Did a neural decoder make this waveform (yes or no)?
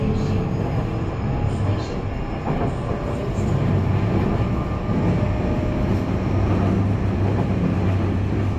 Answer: no